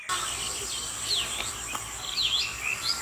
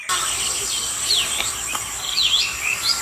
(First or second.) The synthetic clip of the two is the second